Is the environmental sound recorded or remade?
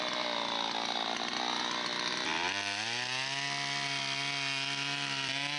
recorded